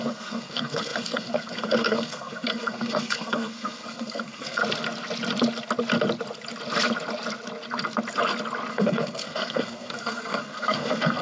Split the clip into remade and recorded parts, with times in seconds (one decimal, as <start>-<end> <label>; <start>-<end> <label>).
0.0-4.6 remade; 4.6-8.7 recorded; 8.7-11.2 remade